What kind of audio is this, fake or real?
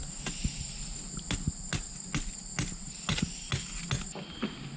real